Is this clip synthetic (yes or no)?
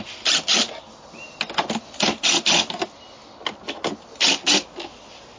no